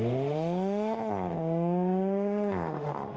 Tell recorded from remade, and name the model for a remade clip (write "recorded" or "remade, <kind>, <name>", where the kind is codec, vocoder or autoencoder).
remade, autoencoder, DAC-VAE